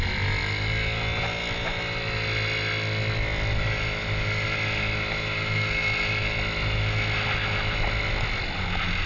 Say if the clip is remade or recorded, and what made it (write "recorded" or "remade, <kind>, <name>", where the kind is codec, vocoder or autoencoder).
recorded